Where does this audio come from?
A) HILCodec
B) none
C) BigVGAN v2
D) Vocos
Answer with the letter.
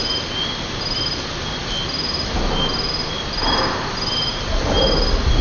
B